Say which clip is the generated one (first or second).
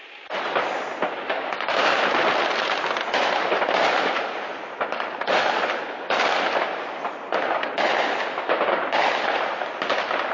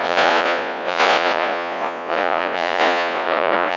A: second